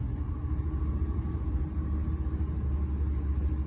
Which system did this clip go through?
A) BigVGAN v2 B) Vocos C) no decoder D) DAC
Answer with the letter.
C